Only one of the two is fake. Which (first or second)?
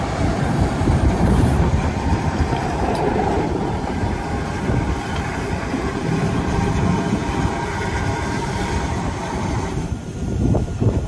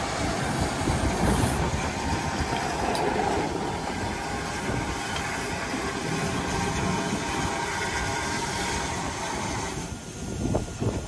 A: first